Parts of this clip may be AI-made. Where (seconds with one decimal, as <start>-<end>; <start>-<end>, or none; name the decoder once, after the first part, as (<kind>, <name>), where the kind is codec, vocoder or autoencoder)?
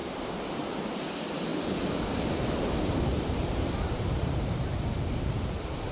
0.0-1.0 (vocoder, BigVGAN v2); 3.1-4.7